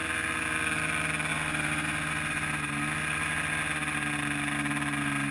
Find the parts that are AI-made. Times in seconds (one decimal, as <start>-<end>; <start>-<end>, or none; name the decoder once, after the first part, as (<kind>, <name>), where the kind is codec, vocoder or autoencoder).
none